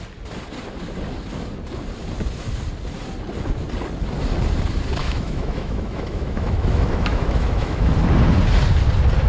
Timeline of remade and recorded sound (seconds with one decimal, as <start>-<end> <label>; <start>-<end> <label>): 0.0-5.0 recorded; 5.0-7.9 remade; 7.9-9.3 recorded